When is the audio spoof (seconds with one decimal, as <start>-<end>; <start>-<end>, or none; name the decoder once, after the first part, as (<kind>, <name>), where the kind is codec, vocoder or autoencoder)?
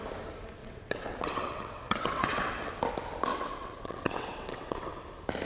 0.6-2.7 (vocoder, WaveNeXt); 3.3-4.9